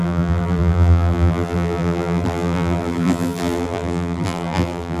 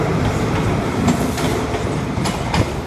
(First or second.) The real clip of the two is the second